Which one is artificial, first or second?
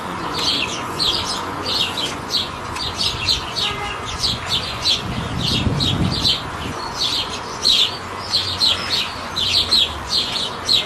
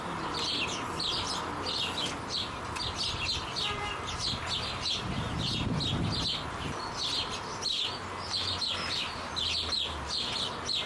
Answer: first